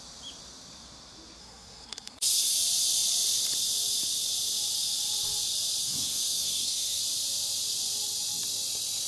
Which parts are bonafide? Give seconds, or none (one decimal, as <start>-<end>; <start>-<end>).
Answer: 0.0-1.4; 2.5-5.8; 7.0-9.1